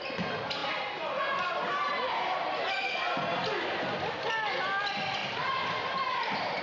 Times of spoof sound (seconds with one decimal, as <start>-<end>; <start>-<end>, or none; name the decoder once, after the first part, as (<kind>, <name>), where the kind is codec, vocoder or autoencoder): 5.2-6.6 (vocoder, BigVGAN v2)